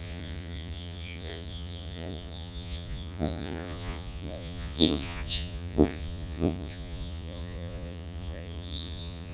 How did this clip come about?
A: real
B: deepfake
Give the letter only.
B